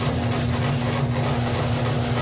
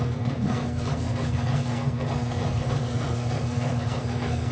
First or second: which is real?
first